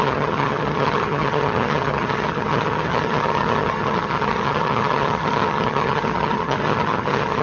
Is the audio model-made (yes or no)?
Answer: yes